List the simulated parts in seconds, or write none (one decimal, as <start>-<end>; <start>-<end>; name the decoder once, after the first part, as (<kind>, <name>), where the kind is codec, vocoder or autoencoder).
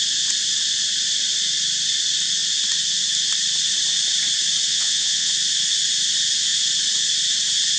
4.7-5.3 (vocoder, WaveNeXt)